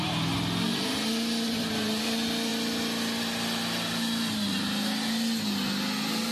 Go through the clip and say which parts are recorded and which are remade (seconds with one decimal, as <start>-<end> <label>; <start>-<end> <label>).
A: 0.0-6.3 recorded